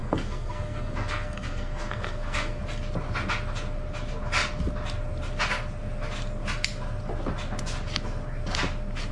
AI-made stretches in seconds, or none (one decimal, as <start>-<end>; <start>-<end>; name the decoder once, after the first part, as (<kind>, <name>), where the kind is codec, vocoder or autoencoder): 0.0-2.6 (codec, SNAC)